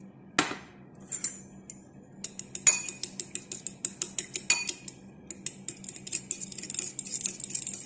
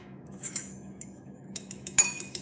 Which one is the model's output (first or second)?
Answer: second